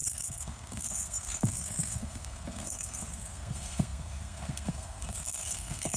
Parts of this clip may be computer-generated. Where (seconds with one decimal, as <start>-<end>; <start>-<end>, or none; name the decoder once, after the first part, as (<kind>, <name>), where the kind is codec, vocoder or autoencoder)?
0.0-6.0 (codec, SNAC)